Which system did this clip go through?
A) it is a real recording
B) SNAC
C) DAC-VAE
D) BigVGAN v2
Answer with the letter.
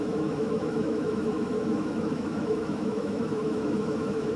C